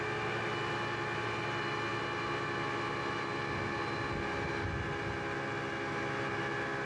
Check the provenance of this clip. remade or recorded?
recorded